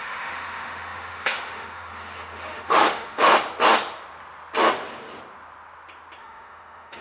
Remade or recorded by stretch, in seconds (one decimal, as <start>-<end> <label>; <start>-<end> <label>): 0.0-3.3 remade; 3.3-6.2 recorded; 6.2-7.0 remade